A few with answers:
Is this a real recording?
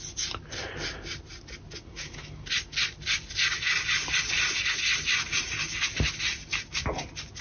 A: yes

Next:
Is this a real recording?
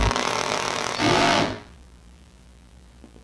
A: no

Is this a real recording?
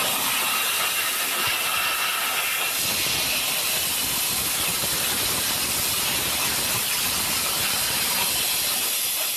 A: yes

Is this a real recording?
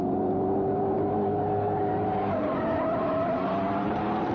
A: no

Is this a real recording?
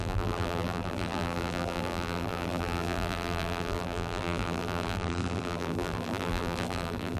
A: no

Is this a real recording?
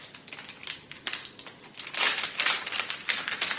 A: yes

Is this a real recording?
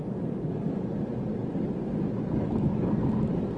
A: yes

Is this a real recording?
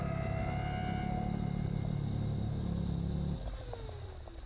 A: yes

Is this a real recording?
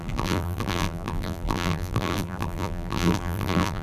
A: no